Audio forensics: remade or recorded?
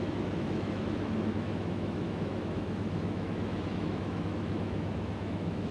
remade